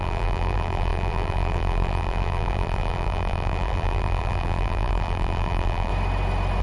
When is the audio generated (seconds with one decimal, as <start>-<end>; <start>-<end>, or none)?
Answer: 0.0-5.9